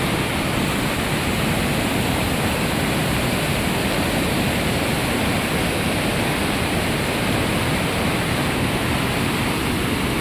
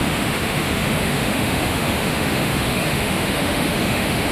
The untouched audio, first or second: first